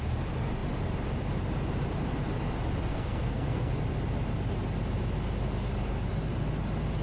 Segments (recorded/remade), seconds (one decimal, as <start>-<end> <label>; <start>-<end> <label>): 0.0-2.9 recorded; 2.9-3.7 remade; 3.7-7.0 recorded